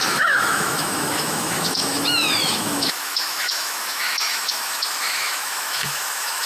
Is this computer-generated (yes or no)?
yes